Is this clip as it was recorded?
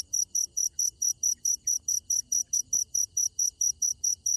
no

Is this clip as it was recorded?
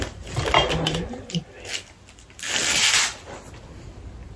no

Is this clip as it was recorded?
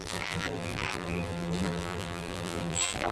no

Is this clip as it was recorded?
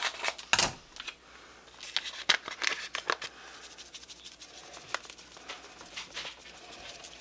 yes